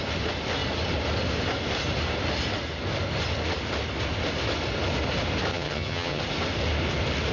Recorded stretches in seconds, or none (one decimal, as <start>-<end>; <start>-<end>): 0.0-5.5; 6.2-7.3